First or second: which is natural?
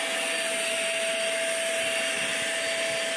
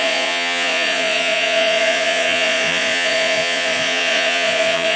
first